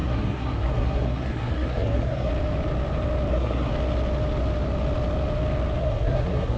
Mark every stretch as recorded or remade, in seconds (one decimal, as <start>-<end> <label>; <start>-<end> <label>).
0.0-2.3 remade; 2.3-3.3 recorded; 3.3-3.7 remade; 3.7-5.8 recorded; 5.8-6.6 remade